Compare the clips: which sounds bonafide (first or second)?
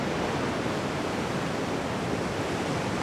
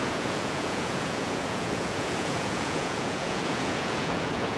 first